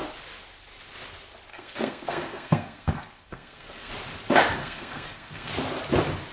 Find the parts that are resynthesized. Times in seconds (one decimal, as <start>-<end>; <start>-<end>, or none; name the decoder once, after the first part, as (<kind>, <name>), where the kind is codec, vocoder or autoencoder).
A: 1.5-3.9 (codec, SNAC); 4.6-5.5